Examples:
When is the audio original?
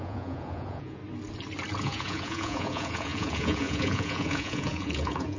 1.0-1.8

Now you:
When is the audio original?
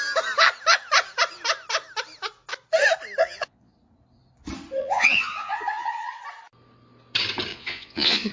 0.0-3.2; 3.7-4.8; 6.2-7.5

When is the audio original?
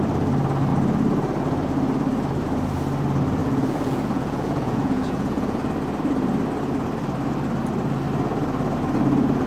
0.0-3.4; 5.6-9.5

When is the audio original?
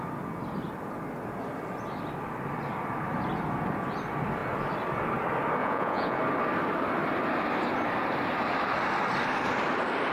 0.0-5.6; 6.2-10.1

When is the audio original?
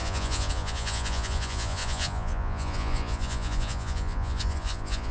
none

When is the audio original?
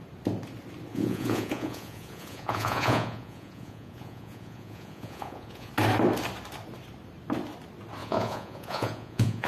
0.0-0.9; 5.7-8.0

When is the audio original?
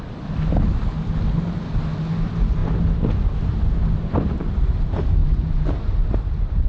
0.0-6.7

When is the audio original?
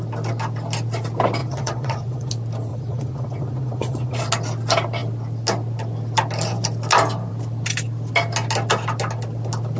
0.0-1.4; 2.3-2.7; 4.3-9.8